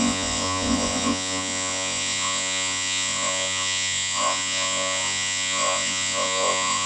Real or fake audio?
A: fake